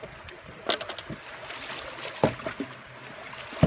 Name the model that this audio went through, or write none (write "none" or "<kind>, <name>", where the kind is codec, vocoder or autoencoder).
none